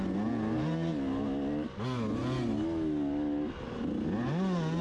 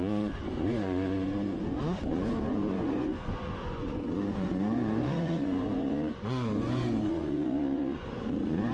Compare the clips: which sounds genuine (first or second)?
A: first